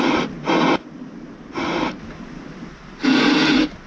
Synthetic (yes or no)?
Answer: no